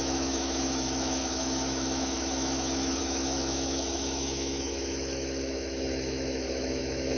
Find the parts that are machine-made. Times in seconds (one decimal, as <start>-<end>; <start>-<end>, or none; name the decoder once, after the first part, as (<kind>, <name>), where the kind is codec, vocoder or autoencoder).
0.0-7.2 (autoencoder, DAC-VAE)